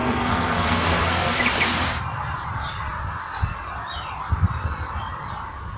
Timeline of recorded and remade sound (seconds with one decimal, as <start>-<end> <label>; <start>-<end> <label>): 0.0-1.4 remade; 1.4-5.8 recorded